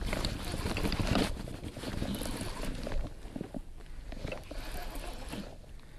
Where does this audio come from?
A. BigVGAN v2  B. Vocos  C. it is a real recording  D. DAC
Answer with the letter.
C